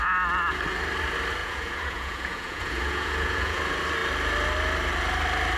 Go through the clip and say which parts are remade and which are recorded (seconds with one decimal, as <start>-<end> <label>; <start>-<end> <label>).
0.0-1.4 recorded; 1.4-3.6 remade; 3.6-5.6 recorded